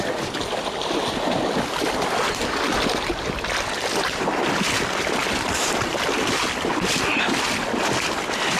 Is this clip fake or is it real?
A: real